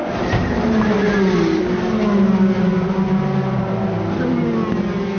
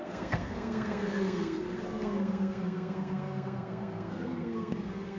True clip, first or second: first